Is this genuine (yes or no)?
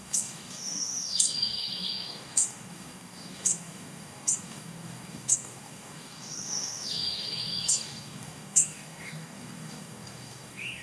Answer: no